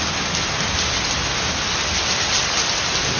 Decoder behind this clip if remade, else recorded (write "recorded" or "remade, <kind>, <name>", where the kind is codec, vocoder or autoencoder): recorded